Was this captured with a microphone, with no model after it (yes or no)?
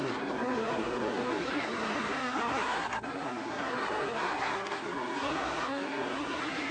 no